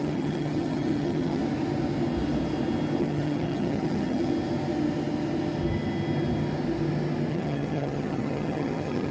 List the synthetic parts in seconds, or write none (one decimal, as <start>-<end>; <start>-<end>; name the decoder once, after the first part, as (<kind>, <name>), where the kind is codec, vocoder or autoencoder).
0.0-1.4 (vocoder, HiFi-GAN); 3.0-4.3; 7.3-9.1